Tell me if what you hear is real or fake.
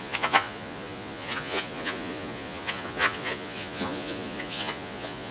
fake